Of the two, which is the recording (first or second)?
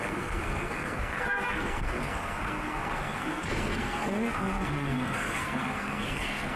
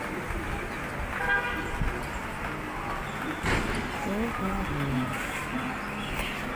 second